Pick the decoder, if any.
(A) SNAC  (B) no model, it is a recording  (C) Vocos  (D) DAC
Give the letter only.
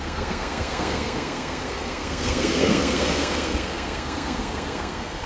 A